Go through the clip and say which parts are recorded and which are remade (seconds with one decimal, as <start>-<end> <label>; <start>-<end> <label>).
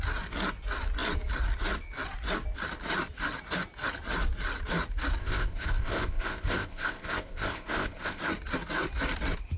0.0-5.2 recorded; 5.2-8.2 remade; 8.2-9.6 recorded